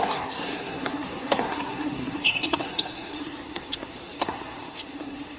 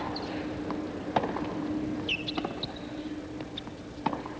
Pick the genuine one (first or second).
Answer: second